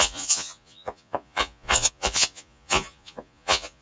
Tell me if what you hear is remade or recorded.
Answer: remade